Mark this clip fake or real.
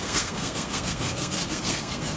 fake